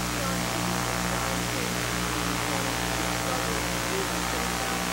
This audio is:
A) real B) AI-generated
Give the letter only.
A